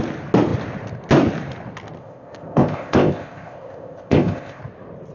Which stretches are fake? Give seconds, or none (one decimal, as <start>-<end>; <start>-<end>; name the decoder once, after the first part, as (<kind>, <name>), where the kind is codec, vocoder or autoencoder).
2.0-4.6 (codec, ZipCodec)